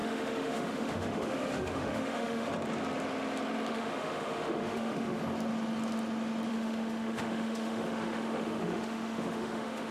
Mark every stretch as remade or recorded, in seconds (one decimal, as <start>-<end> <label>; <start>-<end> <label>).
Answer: 0.0-2.5 remade; 2.5-3.7 recorded; 3.7-5.2 remade; 5.2-6.5 recorded; 6.5-9.9 remade